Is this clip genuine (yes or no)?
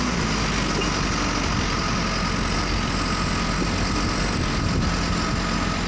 yes